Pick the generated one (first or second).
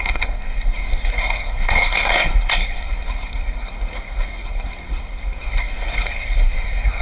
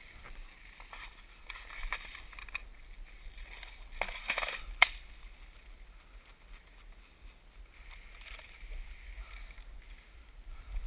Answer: first